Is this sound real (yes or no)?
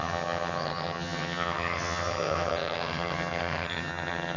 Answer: no